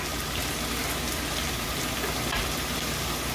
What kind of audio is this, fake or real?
real